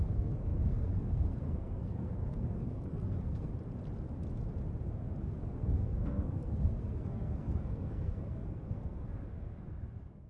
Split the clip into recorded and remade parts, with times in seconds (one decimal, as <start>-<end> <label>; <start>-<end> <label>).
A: 0.0-3.5 remade; 3.5-5.2 recorded; 5.2-10.3 remade